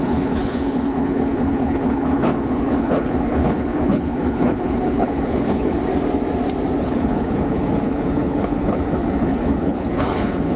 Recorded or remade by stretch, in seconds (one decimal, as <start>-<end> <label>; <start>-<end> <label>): 0.0-5.8 remade; 5.8-6.8 recorded; 6.8-10.6 remade